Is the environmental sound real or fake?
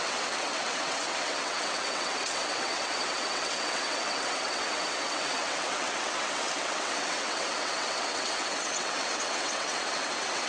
fake